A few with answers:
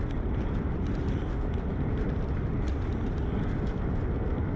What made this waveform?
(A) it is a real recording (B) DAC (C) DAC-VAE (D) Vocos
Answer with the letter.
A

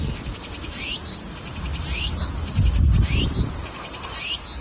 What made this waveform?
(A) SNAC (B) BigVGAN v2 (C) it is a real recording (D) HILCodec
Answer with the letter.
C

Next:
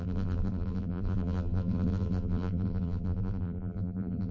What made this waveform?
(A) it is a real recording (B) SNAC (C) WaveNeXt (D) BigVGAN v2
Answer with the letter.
D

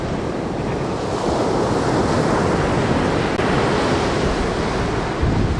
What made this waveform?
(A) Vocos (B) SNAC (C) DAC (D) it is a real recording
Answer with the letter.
D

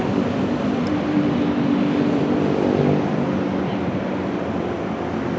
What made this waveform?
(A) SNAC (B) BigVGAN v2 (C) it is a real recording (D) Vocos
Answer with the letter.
B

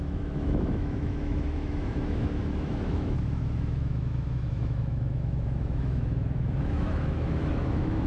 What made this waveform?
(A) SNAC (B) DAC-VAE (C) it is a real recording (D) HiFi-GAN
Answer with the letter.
B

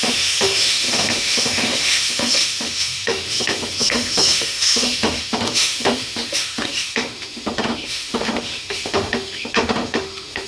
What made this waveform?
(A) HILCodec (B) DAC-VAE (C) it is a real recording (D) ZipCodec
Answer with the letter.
B